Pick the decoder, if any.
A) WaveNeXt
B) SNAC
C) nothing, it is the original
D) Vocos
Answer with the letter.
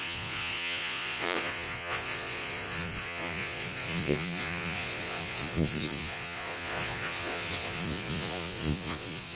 D